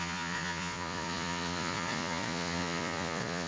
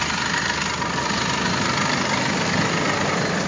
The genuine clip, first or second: second